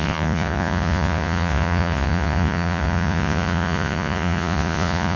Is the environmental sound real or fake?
fake